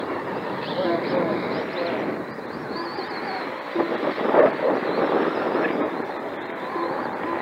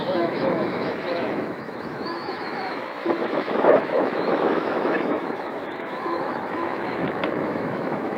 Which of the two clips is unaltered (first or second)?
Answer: first